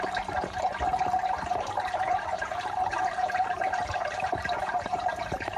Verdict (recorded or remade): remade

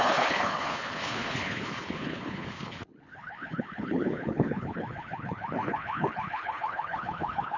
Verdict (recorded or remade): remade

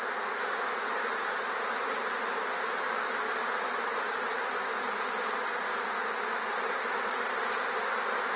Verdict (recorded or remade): recorded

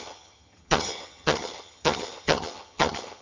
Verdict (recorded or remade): remade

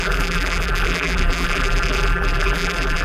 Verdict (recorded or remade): remade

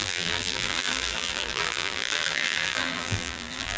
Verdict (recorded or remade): remade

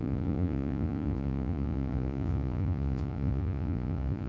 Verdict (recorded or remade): remade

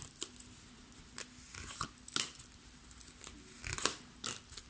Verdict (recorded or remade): recorded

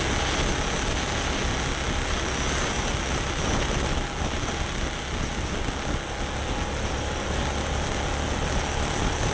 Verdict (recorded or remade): recorded